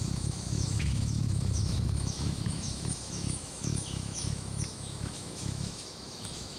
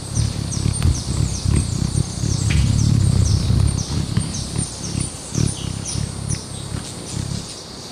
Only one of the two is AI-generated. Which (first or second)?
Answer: first